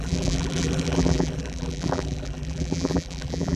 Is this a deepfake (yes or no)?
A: yes